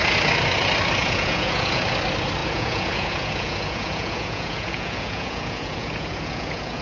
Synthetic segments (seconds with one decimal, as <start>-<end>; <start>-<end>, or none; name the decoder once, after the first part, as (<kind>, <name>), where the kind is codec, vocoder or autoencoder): 1.0-1.8 (vocoder, Vocos); 2.4-6.8